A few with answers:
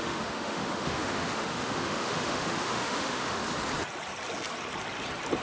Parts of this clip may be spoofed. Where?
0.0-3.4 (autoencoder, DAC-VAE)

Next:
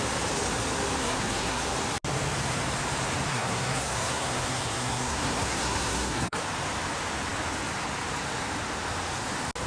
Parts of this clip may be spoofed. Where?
1.0-1.6 (codec, SNAC); 3.3-6.4

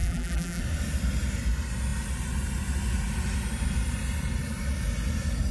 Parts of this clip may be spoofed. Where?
0.0-0.6 (vocoder, BigVGAN v2)